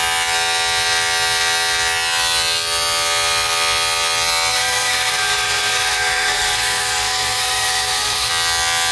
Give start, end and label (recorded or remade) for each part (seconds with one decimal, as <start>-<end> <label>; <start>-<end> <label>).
0.0-4.5 recorded; 4.5-8.3 remade; 8.3-8.9 recorded